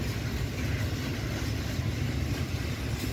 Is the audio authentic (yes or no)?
yes